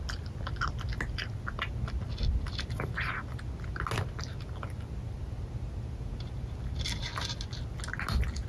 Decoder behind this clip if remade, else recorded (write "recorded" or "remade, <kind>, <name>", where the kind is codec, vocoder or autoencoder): recorded